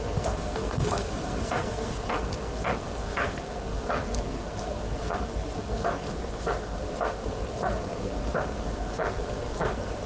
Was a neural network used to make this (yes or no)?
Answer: yes